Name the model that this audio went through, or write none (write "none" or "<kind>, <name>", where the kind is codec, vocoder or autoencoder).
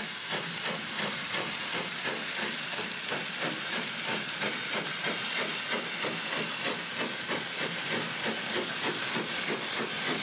none